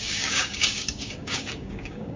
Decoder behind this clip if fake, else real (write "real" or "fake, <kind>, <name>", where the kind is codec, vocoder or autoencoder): fake, codec, DAC